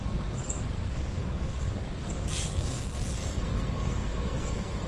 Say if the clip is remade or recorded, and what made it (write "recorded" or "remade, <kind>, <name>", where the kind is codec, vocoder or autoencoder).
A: remade, codec, SNAC